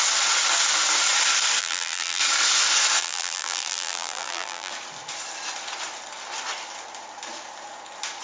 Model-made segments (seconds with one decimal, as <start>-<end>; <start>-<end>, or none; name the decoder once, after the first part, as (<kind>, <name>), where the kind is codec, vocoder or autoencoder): 1.6-2.2 (vocoder, BigVGAN v2); 3.0-4.7